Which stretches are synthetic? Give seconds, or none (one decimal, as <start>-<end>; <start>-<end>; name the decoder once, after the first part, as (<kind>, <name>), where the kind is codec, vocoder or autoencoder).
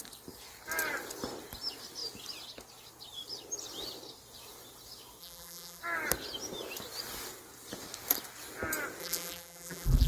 5.2-5.8 (vocoder, BigVGAN v2); 9.0-10.1